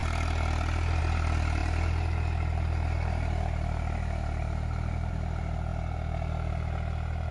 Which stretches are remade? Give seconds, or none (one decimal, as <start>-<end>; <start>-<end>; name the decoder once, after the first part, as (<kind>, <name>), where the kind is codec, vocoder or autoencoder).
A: none